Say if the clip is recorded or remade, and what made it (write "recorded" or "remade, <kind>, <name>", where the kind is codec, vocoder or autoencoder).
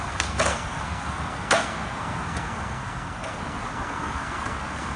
remade, codec, SNAC